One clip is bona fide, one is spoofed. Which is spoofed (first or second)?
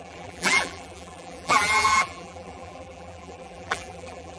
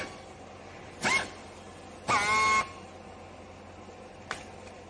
first